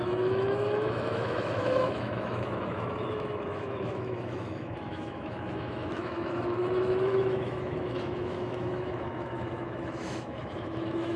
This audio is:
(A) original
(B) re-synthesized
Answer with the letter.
B